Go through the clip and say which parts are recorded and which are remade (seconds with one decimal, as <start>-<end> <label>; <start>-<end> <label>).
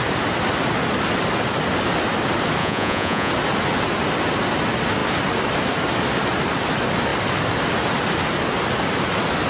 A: 0.0-2.6 recorded; 2.6-3.3 remade; 3.3-9.5 recorded